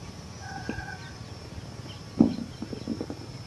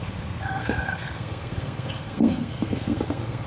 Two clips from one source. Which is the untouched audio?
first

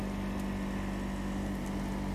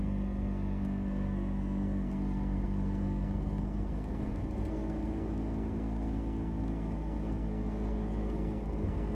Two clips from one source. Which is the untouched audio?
first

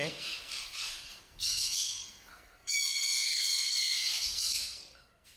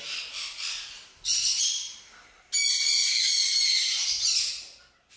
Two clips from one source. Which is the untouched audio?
second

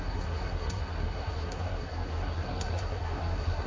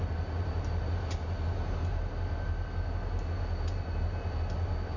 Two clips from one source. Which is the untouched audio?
second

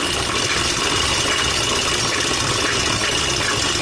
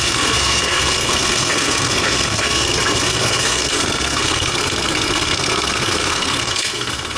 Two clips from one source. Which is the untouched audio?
first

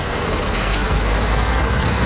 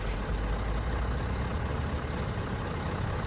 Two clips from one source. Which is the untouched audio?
second